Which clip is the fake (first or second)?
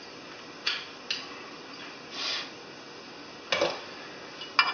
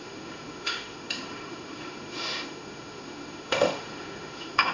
second